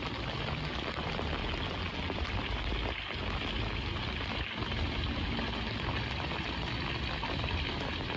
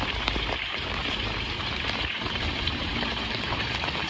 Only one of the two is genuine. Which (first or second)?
first